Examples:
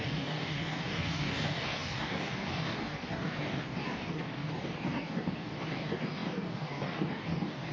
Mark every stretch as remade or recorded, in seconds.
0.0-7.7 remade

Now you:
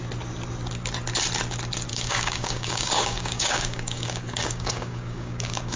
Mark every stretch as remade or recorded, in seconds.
0.0-1.9 recorded; 1.9-5.8 remade

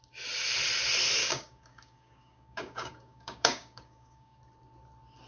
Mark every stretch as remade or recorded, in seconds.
0.0-1.2 recorded; 1.2-4.4 remade; 4.4-5.3 recorded

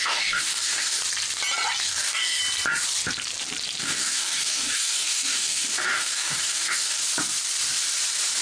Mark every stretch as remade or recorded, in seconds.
0.0-1.0 remade; 1.0-1.8 recorded; 1.8-2.4 remade; 2.4-3.8 recorded; 3.8-7.0 remade; 7.0-8.4 recorded

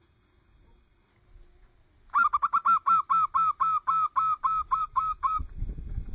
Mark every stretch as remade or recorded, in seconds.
0.0-1.1 remade; 1.1-4.8 recorded; 4.8-6.1 remade

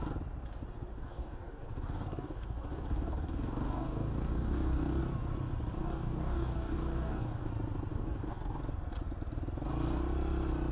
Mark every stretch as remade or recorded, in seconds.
0.0-0.9 recorded; 0.9-5.0 remade; 5.0-5.8 recorded; 5.8-7.5 remade; 7.5-7.9 recorded; 7.9-8.6 remade; 8.6-10.7 recorded

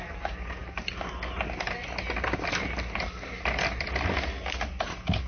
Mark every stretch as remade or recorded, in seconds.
0.0-5.3 recorded